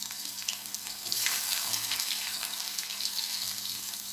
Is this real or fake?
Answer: fake